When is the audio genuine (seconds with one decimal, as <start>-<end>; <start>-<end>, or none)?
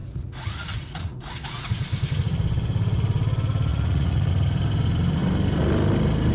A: 1.8-3.7; 4.3-6.3